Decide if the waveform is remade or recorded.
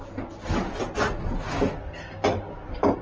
recorded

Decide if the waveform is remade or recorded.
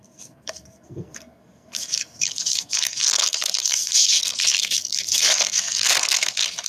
remade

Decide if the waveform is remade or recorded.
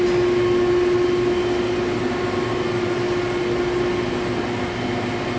recorded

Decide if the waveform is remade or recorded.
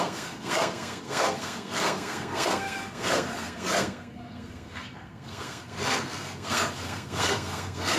remade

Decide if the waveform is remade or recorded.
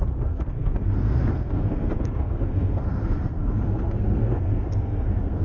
remade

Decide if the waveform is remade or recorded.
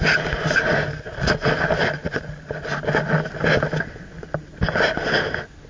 recorded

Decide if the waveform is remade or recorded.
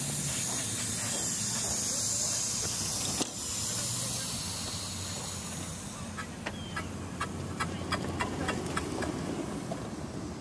recorded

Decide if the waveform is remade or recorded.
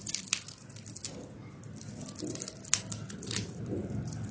recorded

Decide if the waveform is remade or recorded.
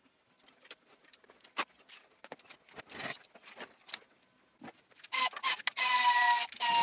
recorded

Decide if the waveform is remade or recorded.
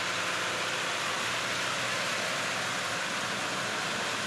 recorded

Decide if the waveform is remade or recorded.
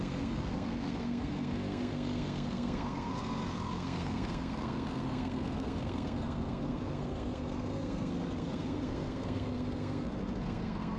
remade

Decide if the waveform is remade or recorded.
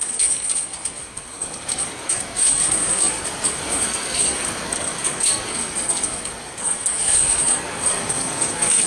remade